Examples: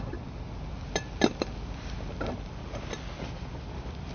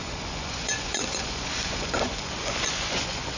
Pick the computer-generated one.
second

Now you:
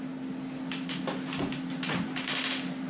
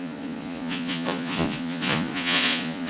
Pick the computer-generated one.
second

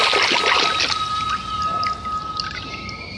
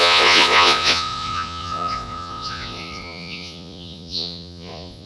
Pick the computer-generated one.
second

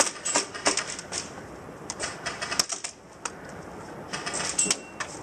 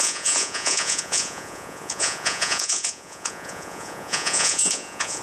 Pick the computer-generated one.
second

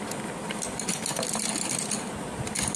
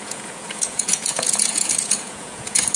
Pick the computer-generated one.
second